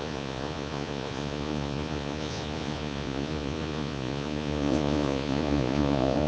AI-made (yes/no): yes